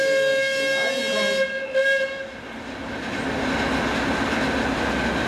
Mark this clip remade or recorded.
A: recorded